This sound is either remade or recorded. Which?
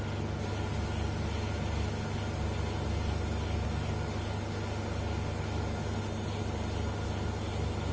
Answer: recorded